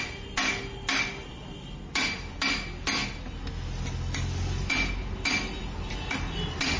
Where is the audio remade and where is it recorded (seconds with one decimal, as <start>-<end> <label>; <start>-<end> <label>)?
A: 0.0-6.8 recorded